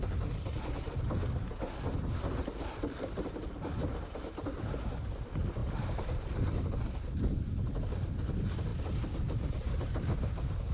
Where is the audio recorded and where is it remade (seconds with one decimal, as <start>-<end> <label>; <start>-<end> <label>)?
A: 0.0-5.6 recorded; 5.6-6.9 remade; 6.9-8.7 recorded; 8.7-10.7 remade